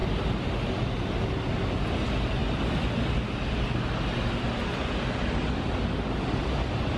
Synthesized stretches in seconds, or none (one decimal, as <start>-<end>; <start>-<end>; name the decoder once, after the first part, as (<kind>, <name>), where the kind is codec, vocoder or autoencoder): none